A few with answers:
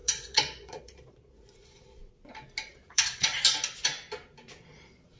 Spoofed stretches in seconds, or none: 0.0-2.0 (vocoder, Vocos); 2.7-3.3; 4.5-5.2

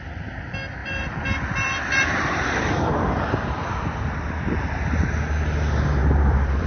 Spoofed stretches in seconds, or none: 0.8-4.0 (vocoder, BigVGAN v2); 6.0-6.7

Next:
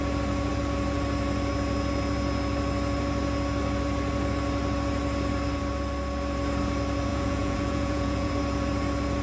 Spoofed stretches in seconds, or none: 7.1-8.3 (vocoder, Vocos)

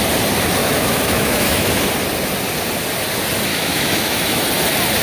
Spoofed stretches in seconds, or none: 0.6-1.7 (autoencoder, DAC-VAE); 3.5-4.4

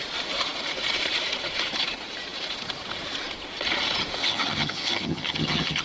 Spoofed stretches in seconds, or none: 4.2-5.8 (vocoder, HiFi-GAN)